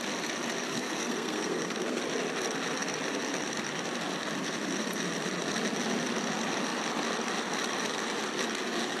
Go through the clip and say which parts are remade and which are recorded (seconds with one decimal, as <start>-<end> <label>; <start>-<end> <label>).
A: 0.0-0.7 recorded; 0.7-2.0 remade; 2.0-9.0 recorded